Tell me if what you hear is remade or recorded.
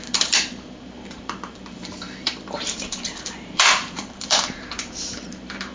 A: remade